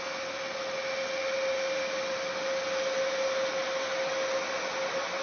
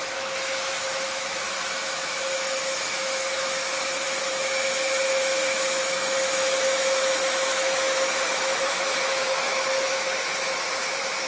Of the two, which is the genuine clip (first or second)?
first